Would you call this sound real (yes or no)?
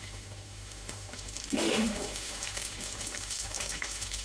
no